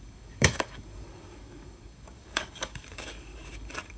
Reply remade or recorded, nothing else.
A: remade